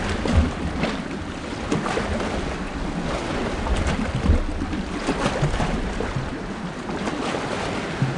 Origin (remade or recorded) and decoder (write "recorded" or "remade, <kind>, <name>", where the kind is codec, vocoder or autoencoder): recorded